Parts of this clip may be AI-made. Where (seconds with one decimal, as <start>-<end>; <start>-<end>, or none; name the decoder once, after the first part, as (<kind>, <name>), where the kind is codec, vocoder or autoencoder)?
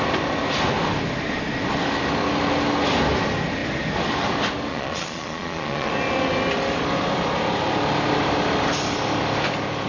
4.7-5.9 (vocoder, Vocos)